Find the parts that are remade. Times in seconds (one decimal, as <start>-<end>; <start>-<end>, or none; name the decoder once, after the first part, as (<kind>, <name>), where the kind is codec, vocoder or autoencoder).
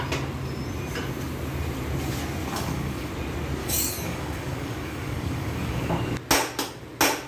2.4-3.1 (codec, DAC); 3.6-5.9